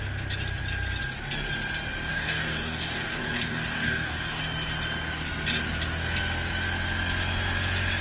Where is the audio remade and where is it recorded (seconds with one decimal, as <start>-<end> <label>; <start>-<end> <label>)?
0.0-2.1 recorded; 2.1-4.4 remade; 4.4-8.0 recorded